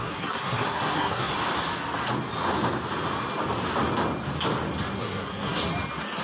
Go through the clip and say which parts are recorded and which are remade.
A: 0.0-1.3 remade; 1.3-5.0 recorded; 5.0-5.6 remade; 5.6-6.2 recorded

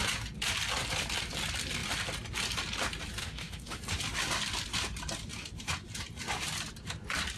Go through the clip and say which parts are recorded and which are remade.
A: 0.0-3.2 recorded; 3.2-3.8 remade; 3.8-7.4 recorded

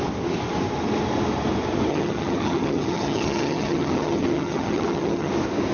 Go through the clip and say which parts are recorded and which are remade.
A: 0.0-1.9 recorded; 1.9-5.3 remade; 5.3-5.7 recorded

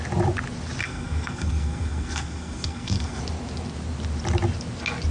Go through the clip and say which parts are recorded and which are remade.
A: 0.0-0.8 recorded; 0.8-3.2 remade; 3.2-5.1 recorded

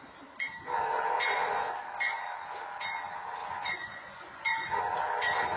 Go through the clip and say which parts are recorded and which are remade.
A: 0.0-3.4 recorded; 3.4-4.8 remade; 4.8-5.6 recorded

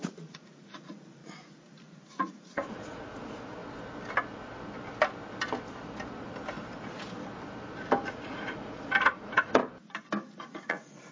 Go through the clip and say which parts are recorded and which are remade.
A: 0.0-1.2 remade; 1.2-2.1 recorded; 2.1-3.6 remade; 3.6-8.1 recorded; 8.1-9.6 remade; 9.6-10.4 recorded; 10.4-11.1 remade

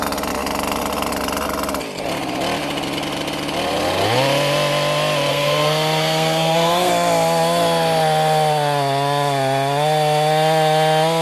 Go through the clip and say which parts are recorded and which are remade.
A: 0.0-5.3 recorded; 5.3-6.9 remade; 6.9-11.2 recorded

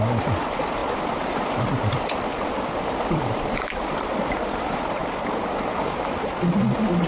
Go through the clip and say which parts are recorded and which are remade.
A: 0.0-0.8 recorded; 0.8-4.1 remade; 4.1-7.1 recorded